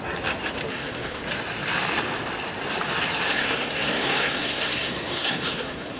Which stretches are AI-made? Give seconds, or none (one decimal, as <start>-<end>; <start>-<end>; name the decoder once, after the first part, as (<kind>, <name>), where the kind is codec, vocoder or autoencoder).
0.7-1.2 (codec, SNAC); 3.3-6.0